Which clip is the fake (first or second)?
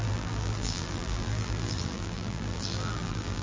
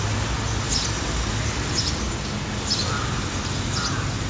first